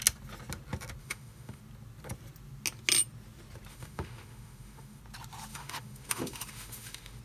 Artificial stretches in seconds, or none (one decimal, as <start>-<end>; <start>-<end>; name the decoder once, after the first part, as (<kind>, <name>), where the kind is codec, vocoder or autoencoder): 1.0-1.6 (autoencoder, DAC-VAE); 3.7-5.0; 5.5-7.2